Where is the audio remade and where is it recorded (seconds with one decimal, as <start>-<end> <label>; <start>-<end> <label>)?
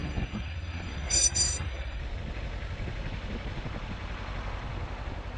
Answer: 0.0-2.0 remade; 2.0-5.4 recorded